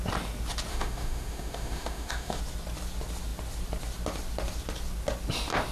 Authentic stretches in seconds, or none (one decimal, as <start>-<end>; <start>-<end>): 0.0-0.7; 2.4-5.7